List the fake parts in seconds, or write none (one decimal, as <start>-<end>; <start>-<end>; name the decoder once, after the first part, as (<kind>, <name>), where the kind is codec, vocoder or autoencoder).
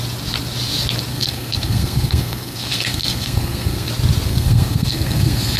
1.1-3.9 (codec, SNAC); 4.3-5.6